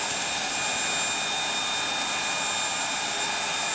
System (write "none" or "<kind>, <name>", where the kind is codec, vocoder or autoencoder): none